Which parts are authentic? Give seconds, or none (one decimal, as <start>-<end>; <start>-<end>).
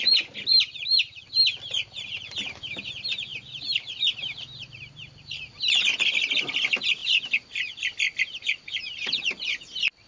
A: 0.0-3.3; 5.4-10.1